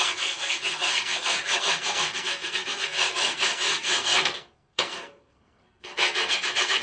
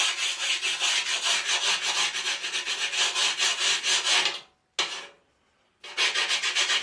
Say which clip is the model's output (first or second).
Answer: first